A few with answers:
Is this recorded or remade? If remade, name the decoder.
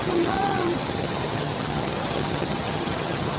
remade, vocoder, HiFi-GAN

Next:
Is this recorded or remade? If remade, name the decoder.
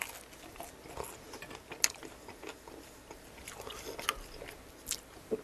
recorded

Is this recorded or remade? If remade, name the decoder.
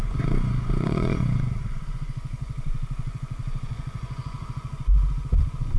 remade, vocoder, Vocos